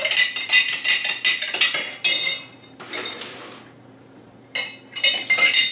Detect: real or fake real